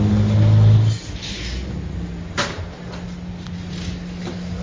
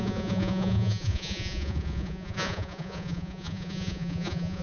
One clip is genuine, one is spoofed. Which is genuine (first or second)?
first